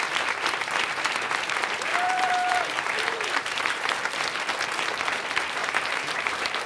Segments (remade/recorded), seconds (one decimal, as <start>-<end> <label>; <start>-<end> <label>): 0.0-1.9 recorded; 1.9-3.9 remade; 3.9-5.6 recorded; 5.6-6.7 remade